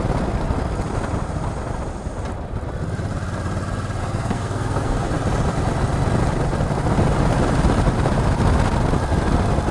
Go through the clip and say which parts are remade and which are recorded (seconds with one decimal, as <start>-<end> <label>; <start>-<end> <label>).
0.0-4.0 recorded; 4.0-5.1 remade; 5.1-9.7 recorded